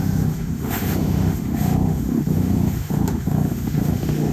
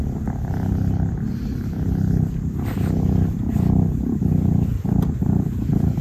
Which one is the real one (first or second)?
second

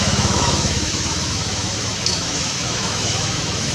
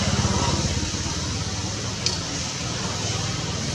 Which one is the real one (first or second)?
second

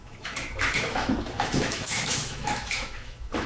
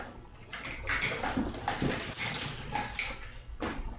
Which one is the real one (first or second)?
second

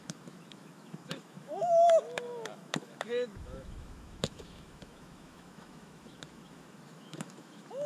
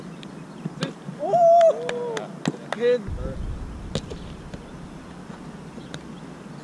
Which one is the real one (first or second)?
second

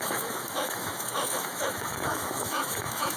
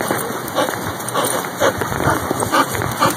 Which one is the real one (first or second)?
second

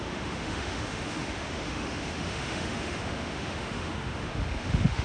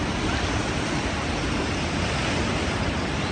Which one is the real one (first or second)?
second